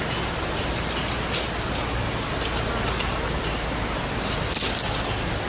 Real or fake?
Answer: real